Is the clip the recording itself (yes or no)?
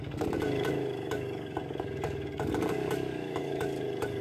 no